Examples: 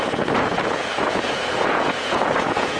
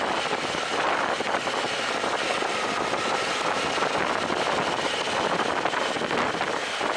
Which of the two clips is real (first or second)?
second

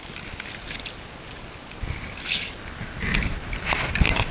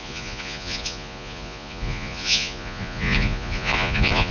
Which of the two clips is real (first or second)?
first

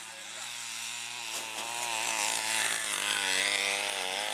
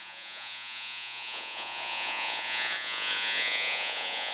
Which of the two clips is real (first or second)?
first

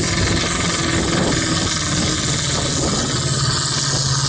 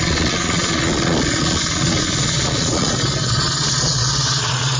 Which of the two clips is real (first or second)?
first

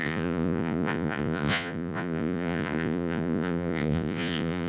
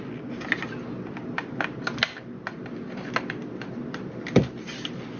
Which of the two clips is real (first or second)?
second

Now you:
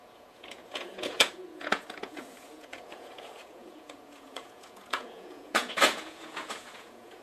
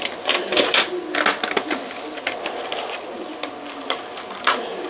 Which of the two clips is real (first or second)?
second